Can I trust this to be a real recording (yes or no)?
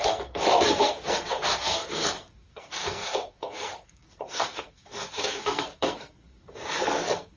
no